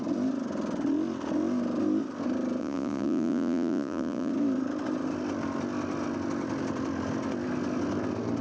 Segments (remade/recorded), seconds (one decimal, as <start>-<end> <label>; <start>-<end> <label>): 0.0-2.6 recorded; 2.6-4.3 remade; 4.3-8.4 recorded